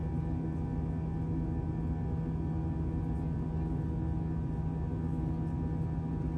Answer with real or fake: real